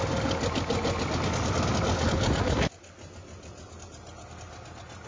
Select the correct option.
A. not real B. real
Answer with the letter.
B